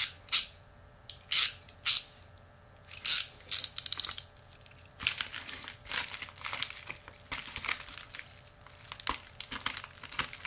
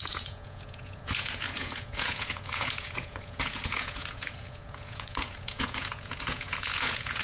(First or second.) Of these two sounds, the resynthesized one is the second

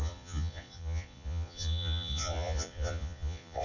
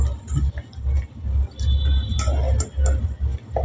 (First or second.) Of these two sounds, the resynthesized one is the first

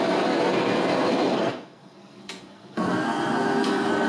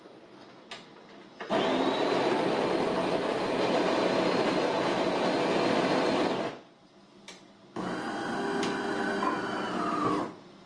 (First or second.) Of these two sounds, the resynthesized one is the first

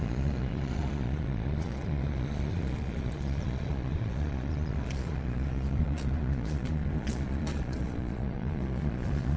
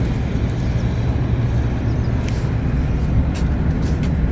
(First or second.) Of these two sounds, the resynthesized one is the first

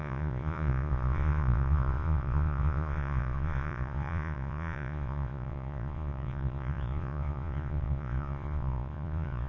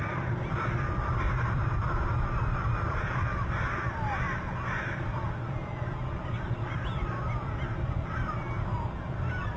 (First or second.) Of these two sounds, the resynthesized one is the first